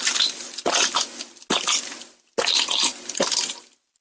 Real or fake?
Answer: real